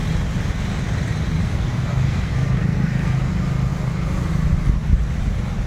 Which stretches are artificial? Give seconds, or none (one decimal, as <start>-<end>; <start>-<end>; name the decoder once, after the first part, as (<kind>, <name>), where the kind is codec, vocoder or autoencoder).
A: 1.4-3.3 (codec, SNAC)